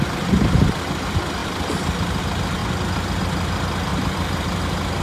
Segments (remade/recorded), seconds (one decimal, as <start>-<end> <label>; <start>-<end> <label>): 0.0-1.4 recorded; 1.4-2.2 remade; 2.2-2.6 recorded; 2.6-3.2 remade; 3.2-3.9 recorded; 3.9-4.6 remade; 4.6-5.0 recorded